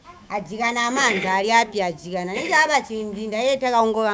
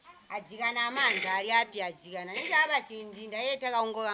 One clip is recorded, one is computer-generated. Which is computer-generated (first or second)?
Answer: first